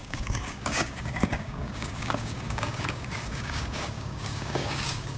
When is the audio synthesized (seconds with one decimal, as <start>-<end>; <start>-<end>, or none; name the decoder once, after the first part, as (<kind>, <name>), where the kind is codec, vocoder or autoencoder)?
0.0-5.2 (codec, DAC)